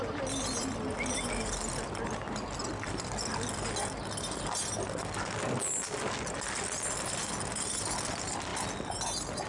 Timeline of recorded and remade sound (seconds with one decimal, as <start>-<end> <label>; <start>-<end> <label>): 0.0-9.5 recorded